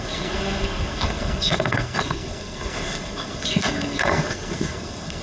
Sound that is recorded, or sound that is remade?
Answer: remade